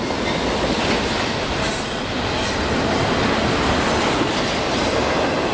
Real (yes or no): yes